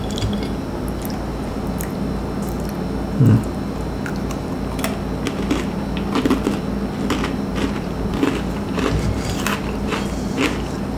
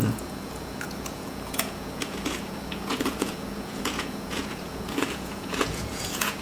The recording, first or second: first